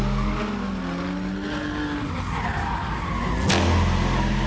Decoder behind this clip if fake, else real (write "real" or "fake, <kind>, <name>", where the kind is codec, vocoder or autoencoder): real